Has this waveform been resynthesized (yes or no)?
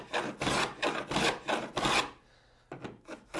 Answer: no